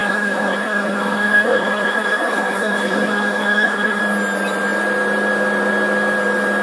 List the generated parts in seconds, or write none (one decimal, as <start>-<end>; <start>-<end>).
0.0-4.0